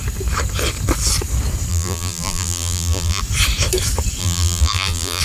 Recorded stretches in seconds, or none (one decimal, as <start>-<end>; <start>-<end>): 0.0-1.7; 3.2-4.2